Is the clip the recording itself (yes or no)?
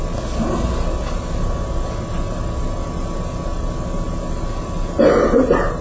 yes